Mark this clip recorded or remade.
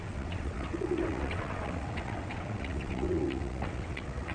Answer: remade